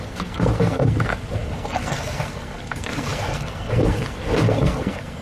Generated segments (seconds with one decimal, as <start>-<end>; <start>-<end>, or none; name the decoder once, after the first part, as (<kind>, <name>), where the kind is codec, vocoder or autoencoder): 0.0-5.2 (codec, SNAC)

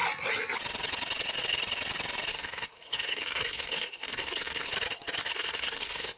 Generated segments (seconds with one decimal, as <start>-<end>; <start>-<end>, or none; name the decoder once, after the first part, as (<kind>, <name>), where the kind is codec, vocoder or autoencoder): 2.3-4.7 (codec, SNAC); 5.2-6.2

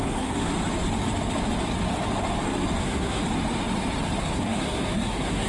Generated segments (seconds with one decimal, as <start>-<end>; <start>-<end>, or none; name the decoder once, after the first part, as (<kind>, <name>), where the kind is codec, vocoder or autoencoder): 0.0-0.5 (codec, SNAC); 2.8-3.2; 4.2-5.5

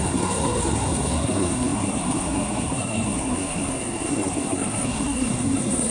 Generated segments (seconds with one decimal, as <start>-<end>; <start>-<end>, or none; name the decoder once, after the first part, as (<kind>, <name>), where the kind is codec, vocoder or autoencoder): 0.0-5.9 (codec, SNAC)